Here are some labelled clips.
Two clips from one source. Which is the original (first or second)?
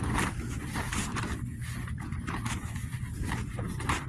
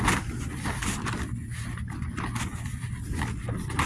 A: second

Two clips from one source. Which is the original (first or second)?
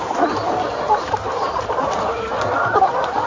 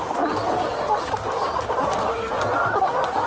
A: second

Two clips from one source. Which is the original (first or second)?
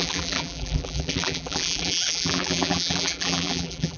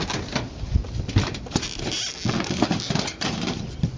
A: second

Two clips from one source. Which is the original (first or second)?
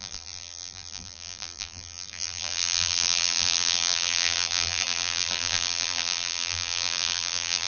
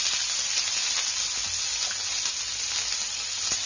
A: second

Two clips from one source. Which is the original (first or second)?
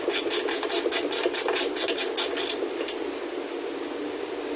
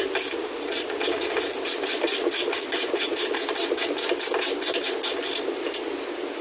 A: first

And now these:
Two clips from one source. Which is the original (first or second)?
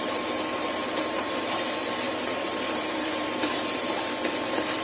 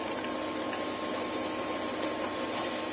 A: second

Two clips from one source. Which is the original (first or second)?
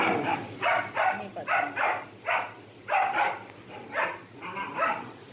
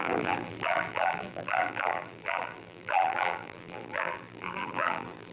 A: first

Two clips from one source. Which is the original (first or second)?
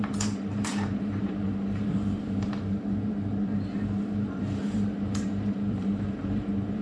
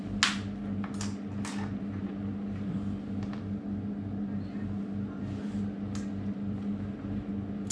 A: second